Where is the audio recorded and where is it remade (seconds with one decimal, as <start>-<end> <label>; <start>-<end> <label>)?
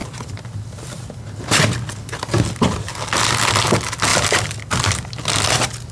0.0-1.1 remade; 1.1-4.1 recorded; 4.1-4.6 remade; 4.6-5.9 recorded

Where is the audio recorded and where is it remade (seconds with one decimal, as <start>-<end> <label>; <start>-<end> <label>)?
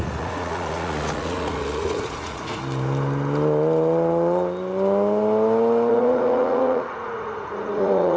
0.0-2.6 remade; 2.6-5.9 recorded; 5.9-8.2 remade